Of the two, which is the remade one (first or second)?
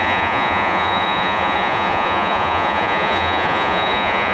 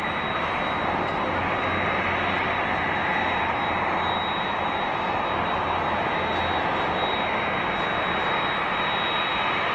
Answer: first